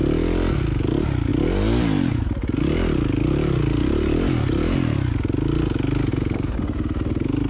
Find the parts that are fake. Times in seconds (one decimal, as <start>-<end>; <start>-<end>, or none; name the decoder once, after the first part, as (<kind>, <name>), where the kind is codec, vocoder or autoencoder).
none